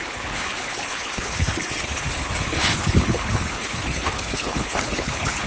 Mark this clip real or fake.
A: fake